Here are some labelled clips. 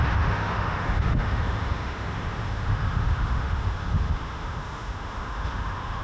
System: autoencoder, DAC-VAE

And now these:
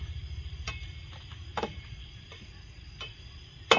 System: none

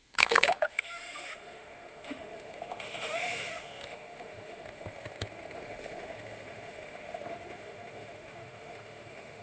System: autoencoder, DAC-VAE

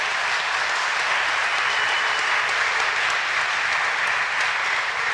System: none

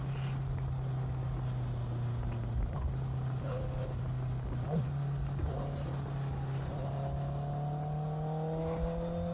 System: none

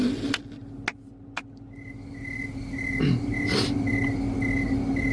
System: none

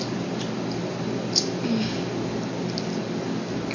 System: none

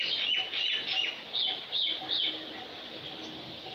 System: none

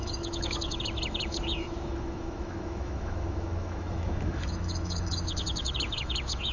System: autoencoder, DAC-VAE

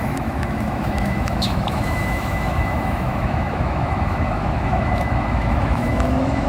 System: autoencoder, DAC-VAE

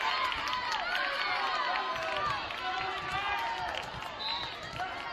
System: none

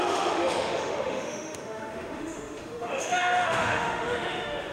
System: autoencoder, DAC-VAE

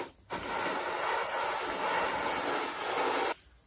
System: none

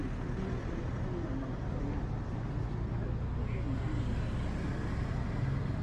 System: none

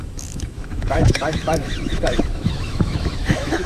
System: autoencoder, DAC-VAE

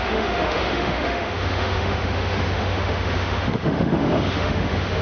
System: autoencoder, DAC-VAE